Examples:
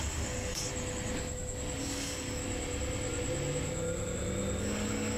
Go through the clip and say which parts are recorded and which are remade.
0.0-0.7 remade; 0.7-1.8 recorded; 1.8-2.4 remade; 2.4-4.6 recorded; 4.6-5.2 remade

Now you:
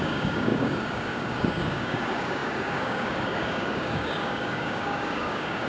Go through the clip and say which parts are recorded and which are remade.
0.0-5.7 remade

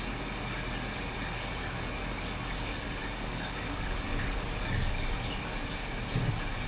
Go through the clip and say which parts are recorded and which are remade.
0.0-1.6 recorded; 1.6-4.9 remade; 4.9-6.7 recorded

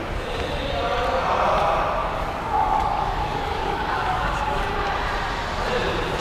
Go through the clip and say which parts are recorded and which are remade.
0.0-2.0 recorded; 2.0-4.6 remade; 4.6-6.2 recorded

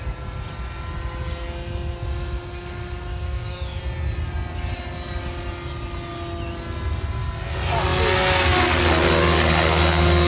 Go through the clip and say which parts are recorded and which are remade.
0.0-3.1 recorded; 3.1-3.8 remade; 3.8-10.3 recorded